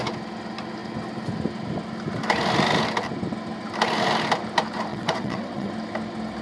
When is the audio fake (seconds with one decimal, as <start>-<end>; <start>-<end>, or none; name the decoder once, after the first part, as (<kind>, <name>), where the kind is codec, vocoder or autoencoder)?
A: 4.9-5.7 (vocoder, WaveNeXt)